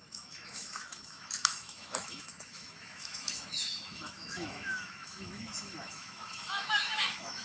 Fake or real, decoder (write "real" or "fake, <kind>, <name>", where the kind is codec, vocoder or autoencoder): fake, autoencoder, DAC-VAE